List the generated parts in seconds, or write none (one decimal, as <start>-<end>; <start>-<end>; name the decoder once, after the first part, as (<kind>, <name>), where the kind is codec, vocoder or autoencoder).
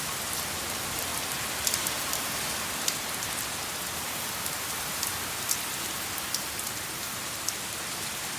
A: 0.0-1.1 (vocoder, BigVGAN v2); 1.9-5.1; 6.4-8.4